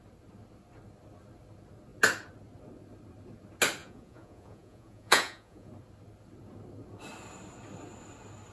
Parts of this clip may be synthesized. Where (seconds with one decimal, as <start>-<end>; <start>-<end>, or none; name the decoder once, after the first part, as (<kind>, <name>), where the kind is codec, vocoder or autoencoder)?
3.8-5.7 (vocoder, Vocos)